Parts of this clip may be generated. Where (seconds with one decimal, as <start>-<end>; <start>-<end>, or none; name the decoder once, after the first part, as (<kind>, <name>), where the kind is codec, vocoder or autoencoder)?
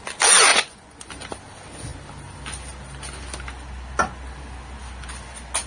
0.5-1.1 (vocoder, Vocos)